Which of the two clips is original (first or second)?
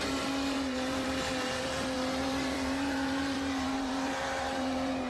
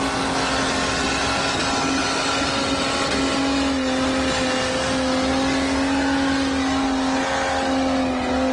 second